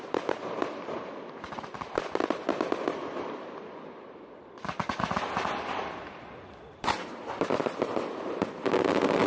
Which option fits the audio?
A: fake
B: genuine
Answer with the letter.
A